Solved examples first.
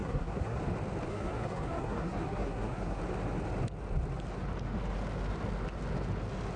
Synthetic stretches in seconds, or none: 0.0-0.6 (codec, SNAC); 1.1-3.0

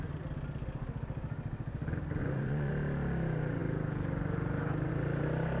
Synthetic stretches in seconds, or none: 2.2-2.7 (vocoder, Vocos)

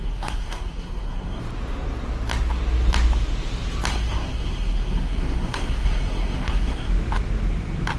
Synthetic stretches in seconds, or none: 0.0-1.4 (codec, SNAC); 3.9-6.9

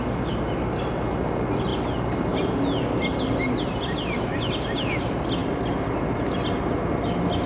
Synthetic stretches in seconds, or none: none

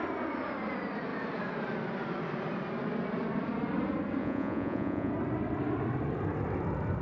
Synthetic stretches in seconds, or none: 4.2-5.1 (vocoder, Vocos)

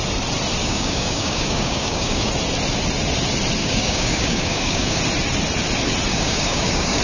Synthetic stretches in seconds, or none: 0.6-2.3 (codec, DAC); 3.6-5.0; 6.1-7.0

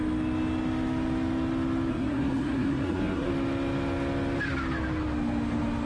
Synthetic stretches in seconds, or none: 1.9-3.3 (codec, SNAC)

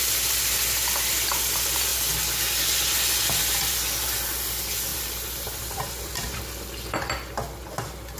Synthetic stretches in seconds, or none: 4.9-6.4 (vocoder, BigVGAN v2)